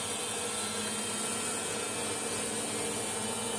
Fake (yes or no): no